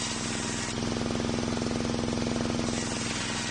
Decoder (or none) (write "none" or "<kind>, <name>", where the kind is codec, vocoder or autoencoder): none